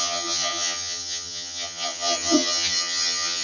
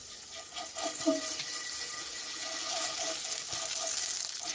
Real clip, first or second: second